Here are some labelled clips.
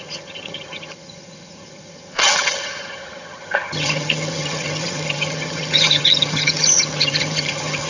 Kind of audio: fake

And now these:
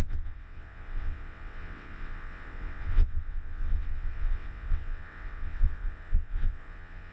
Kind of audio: fake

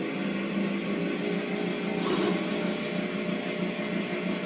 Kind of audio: real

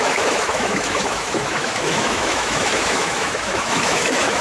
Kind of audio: fake